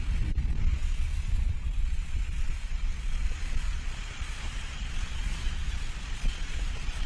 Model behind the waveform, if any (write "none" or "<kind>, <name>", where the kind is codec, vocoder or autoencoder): vocoder, Vocos